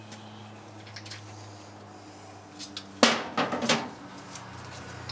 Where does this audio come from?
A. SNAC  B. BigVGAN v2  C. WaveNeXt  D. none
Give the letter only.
D